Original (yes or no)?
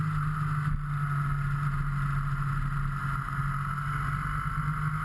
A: yes